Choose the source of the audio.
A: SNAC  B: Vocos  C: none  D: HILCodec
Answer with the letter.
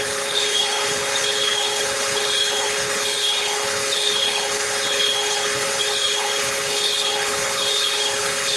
D